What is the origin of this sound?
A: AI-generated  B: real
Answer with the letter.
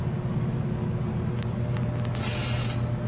B